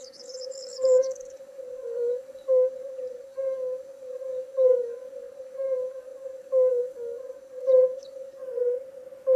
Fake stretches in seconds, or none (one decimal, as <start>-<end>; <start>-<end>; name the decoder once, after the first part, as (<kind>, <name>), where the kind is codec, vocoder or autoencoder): 0.0-8.4 (codec, DAC)